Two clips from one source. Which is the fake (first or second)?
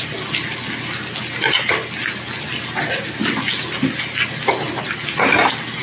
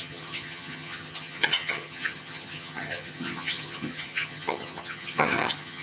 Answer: second